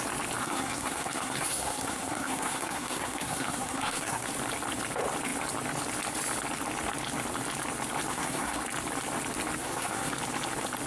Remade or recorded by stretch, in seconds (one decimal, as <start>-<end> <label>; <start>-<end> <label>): 0.0-0.4 recorded; 0.4-4.3 remade; 4.3-8.1 recorded; 8.1-8.6 remade; 8.6-9.6 recorded; 9.6-10.1 remade; 10.1-10.9 recorded